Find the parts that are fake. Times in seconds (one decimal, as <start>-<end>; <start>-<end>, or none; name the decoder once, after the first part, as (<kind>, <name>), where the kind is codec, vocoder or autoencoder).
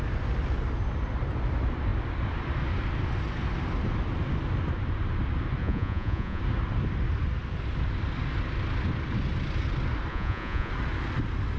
5.6-6.4 (vocoder, Vocos); 10.1-10.7